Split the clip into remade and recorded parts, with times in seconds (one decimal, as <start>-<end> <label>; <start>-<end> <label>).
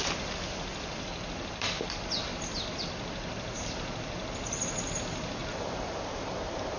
0.0-5.4 recorded; 5.4-6.3 remade; 6.3-6.8 recorded